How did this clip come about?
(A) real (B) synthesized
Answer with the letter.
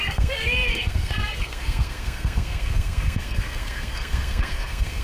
B